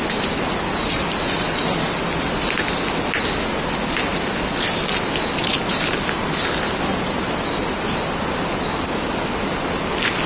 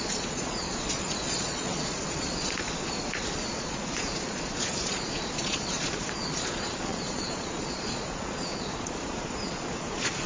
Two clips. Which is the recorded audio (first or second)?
first